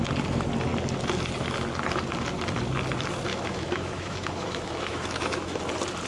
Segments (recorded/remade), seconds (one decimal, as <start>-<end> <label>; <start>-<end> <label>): 0.0-3.3 recorded; 3.3-5.6 remade; 5.6-6.1 recorded